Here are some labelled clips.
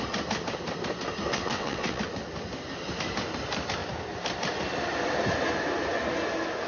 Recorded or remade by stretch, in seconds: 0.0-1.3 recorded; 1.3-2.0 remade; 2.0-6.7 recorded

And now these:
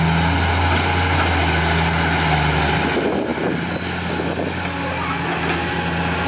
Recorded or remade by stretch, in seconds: 0.0-6.3 recorded

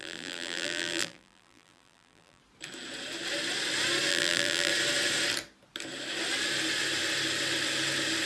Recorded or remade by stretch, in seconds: 0.0-2.4 remade; 2.4-4.1 recorded; 4.1-4.7 remade; 4.7-8.3 recorded

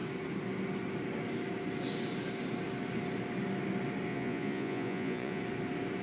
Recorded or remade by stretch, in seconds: 0.0-4.1 recorded; 4.1-5.4 remade; 5.4-6.0 recorded

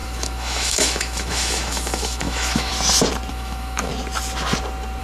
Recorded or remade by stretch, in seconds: 0.0-2.7 remade; 2.7-3.3 recorded; 3.3-3.9 remade; 3.9-5.0 recorded

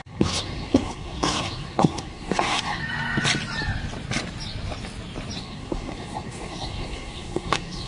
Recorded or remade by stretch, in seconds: 0.0-2.8 remade; 2.8-5.4 recorded; 5.4-7.9 remade

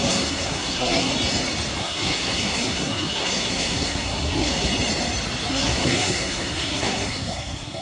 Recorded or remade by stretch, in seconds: 0.0-1.1 remade; 1.1-1.8 recorded; 1.8-4.7 remade; 4.7-5.5 recorded; 5.5-7.8 remade